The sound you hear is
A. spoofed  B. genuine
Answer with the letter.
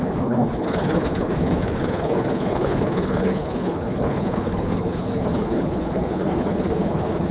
A